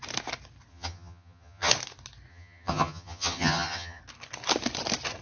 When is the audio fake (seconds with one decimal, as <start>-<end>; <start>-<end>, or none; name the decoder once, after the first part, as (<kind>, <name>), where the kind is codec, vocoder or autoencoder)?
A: 0.7-1.7 (vocoder, HiFi-GAN); 2.3-4.0